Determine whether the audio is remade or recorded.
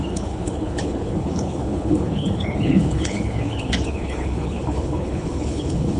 remade